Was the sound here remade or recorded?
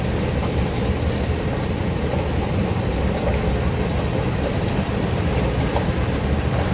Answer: recorded